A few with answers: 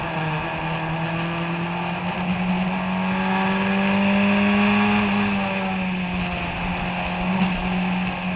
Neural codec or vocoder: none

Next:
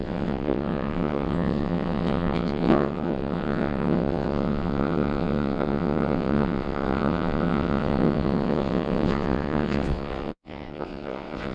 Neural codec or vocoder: vocoder, WaveNeXt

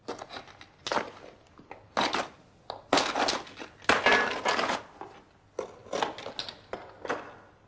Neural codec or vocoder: none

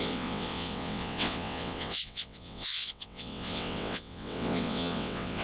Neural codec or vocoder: vocoder, WaveNeXt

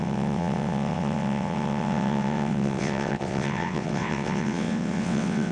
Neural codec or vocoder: vocoder, WaveNeXt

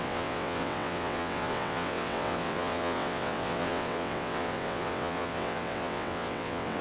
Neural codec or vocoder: vocoder, WaveNeXt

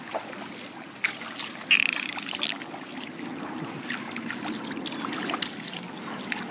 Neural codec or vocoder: none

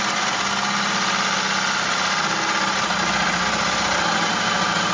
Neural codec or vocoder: none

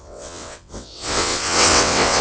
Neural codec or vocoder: vocoder, WaveNeXt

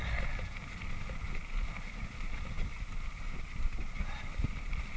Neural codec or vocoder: none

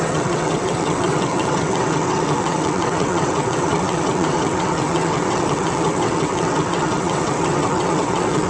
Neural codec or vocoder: vocoder, WaveNeXt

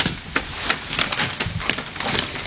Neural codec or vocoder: none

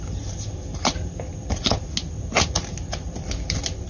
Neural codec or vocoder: none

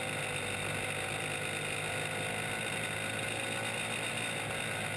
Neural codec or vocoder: none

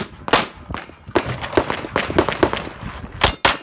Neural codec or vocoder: none